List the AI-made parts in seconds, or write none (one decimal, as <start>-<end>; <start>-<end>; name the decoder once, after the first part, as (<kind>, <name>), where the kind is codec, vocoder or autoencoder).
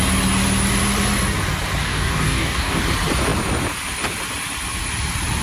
1.8-2.8 (codec, DAC)